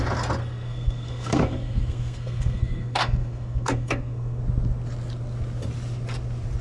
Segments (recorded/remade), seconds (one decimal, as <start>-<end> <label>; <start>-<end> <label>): 0.0-0.4 recorded; 0.4-4.4 remade; 4.4-6.6 recorded